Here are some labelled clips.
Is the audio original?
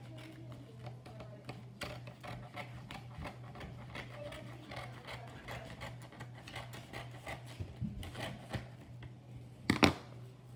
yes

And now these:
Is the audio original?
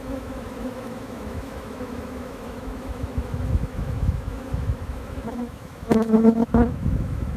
no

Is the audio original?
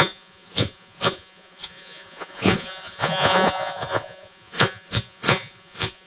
no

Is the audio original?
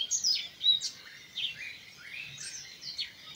yes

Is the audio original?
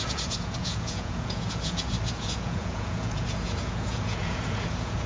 no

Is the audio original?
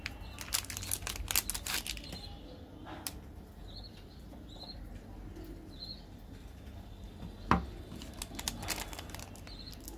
yes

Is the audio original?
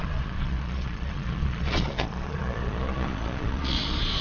no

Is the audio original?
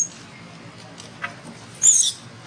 yes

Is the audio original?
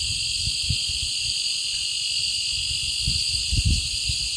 yes